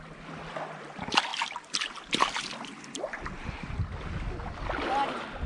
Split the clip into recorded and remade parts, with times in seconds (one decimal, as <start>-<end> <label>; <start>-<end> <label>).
0.0-5.5 recorded